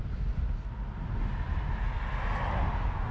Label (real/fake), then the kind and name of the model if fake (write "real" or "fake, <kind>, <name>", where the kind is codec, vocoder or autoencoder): real